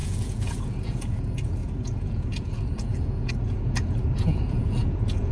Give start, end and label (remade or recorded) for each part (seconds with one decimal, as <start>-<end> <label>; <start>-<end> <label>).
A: 0.0-5.3 remade